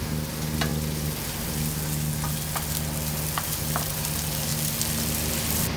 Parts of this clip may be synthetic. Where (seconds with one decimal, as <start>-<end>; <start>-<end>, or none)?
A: none